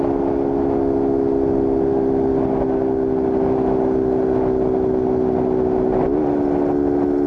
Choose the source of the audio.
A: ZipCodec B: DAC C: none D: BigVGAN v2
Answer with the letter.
C